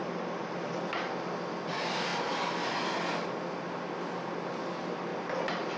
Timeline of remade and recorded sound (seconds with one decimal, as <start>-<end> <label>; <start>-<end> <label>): 0.0-5.8 recorded